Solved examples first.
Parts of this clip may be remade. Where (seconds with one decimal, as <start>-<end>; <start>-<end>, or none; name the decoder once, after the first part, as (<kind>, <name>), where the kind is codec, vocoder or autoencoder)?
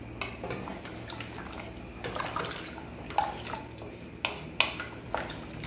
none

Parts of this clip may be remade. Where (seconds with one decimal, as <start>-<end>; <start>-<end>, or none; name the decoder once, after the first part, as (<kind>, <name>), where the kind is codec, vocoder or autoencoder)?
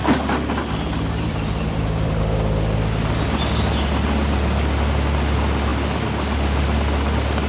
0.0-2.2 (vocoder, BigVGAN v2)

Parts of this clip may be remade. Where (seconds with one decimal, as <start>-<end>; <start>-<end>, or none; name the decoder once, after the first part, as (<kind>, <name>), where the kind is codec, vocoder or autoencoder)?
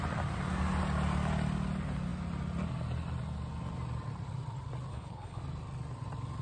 4.9-5.4 (codec, HILCodec)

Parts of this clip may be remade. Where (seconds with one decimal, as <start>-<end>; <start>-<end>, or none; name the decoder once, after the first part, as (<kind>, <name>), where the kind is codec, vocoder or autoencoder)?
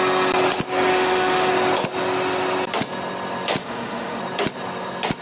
0.9-1.5 (autoencoder, DAC-VAE); 3.6-4.2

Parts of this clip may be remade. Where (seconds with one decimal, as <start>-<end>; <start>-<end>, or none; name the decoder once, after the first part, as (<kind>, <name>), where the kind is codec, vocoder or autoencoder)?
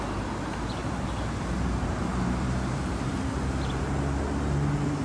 0.8-3.8 (vocoder, BigVGAN v2)